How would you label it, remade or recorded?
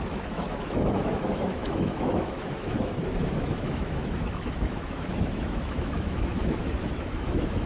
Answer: remade